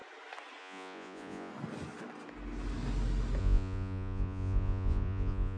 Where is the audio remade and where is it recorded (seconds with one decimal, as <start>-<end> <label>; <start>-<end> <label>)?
0.0-0.6 recorded; 0.6-1.5 remade; 1.5-3.4 recorded; 3.4-5.6 remade